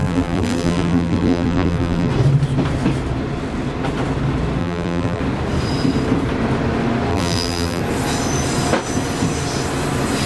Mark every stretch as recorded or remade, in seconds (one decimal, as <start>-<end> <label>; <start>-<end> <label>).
0.0-2.1 remade; 2.1-4.6 recorded; 4.6-5.2 remade; 5.2-7.1 recorded; 7.1-7.8 remade; 7.8-10.3 recorded